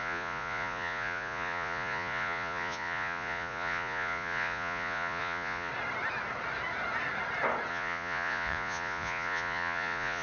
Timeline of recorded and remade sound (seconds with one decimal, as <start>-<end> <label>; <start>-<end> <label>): 0.0-5.7 remade; 5.7-7.7 recorded; 7.7-10.2 remade